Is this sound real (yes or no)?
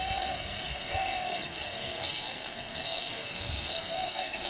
no